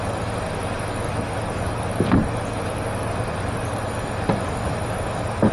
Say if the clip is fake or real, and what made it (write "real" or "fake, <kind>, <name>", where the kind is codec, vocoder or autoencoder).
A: real